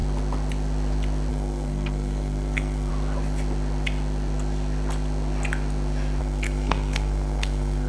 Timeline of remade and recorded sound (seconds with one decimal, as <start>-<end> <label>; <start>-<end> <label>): 0.0-1.3 recorded; 1.3-2.9 remade; 2.9-6.2 recorded; 6.2-7.9 remade